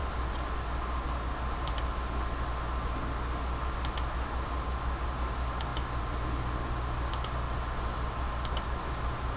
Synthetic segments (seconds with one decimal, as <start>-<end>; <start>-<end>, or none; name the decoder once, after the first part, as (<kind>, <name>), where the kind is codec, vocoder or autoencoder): none